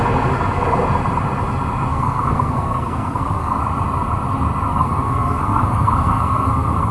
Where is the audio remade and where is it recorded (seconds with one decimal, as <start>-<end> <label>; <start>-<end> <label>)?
0.0-1.9 recorded; 1.9-3.6 remade; 3.6-4.7 recorded; 4.7-6.9 remade